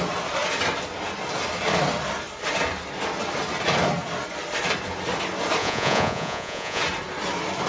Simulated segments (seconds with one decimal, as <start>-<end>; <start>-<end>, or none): 5.6-6.8